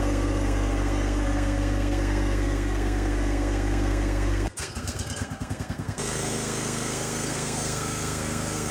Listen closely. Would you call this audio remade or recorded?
remade